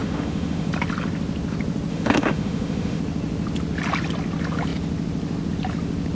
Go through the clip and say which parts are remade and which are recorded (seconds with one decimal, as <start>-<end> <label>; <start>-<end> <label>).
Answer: 0.0-0.7 remade; 0.7-1.9 recorded; 1.9-3.0 remade; 3.0-6.1 recorded